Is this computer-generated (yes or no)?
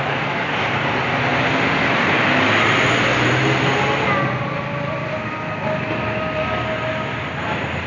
no